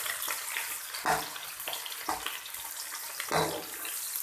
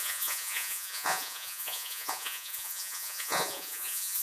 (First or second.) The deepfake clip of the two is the second